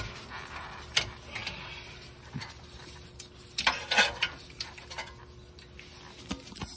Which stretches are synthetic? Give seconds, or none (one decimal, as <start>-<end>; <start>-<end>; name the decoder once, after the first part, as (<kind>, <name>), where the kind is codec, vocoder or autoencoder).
none